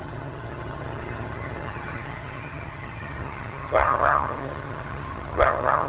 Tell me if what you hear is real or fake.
fake